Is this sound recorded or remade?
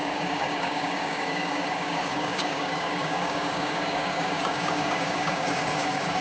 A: remade